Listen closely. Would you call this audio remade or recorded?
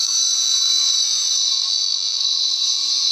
remade